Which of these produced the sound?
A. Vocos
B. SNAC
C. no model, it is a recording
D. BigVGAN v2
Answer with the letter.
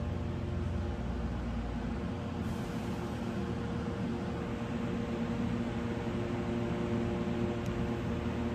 C